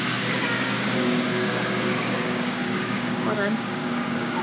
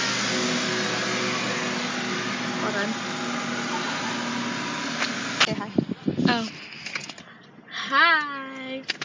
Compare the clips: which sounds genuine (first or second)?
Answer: second